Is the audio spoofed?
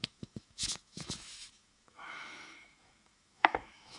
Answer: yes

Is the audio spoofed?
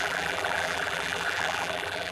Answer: yes